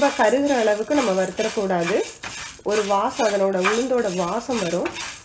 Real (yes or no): yes